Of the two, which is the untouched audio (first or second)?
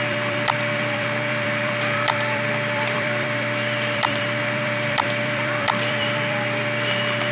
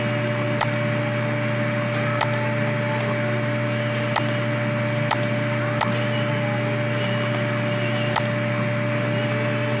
second